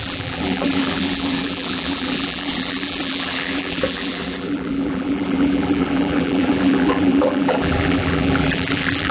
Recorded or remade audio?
remade